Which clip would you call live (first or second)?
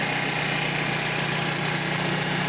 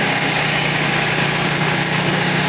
first